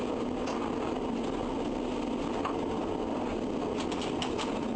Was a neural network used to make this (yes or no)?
no